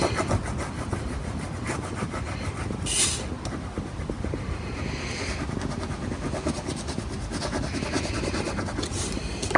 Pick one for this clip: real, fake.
real